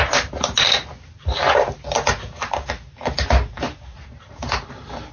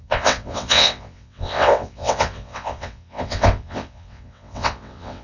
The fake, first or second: second